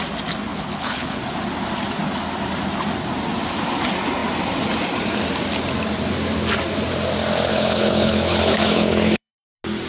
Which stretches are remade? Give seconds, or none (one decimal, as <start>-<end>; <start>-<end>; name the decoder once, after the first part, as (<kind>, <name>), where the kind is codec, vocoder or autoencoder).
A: 0.5-1.2 (codec, HILCodec); 7.5-9.3